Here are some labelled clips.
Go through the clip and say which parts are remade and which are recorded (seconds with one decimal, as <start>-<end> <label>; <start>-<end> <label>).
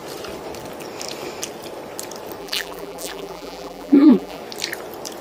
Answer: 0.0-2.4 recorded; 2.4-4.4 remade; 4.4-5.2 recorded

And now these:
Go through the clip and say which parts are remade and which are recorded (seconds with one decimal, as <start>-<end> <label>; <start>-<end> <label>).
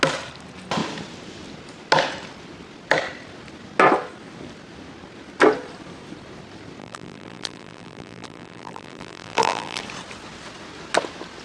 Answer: 0.0-6.8 recorded; 6.8-9.8 remade; 9.8-11.4 recorded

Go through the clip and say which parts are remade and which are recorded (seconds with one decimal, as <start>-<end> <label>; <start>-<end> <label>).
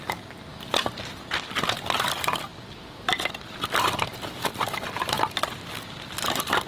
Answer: 0.0-2.5 recorded; 2.5-5.3 remade; 5.3-6.7 recorded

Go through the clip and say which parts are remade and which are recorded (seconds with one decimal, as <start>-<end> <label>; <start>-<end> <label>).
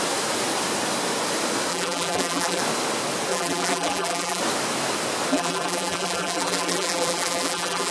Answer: 0.0-1.7 recorded; 1.7-2.6 remade; 2.6-3.3 recorded; 3.3-4.4 remade; 4.4-5.3 recorded; 5.3-7.9 remade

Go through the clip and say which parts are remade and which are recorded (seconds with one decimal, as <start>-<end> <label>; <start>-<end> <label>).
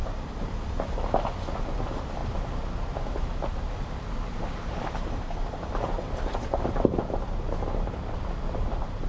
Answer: 0.0-9.1 recorded